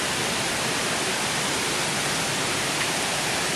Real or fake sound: real